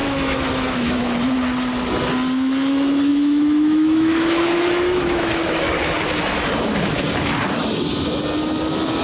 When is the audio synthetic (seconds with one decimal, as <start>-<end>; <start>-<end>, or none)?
0.0-1.0; 3.1-5.8